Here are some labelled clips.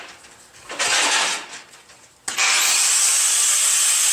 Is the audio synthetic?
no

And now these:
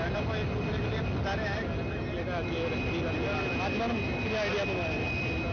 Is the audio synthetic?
no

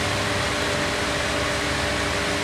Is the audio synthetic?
no